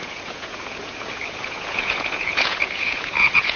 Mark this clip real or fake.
fake